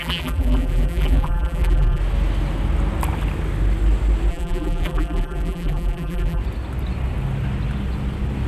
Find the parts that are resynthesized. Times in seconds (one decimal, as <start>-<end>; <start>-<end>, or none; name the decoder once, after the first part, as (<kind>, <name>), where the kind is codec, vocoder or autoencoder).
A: 0.0-2.0 (vocoder, BigVGAN v2); 4.3-6.4